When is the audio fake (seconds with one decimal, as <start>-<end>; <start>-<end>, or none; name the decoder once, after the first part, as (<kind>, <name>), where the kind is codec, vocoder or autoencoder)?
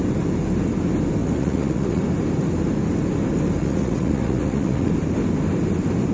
1.2-2.0 (vocoder, Vocos); 3.6-4.9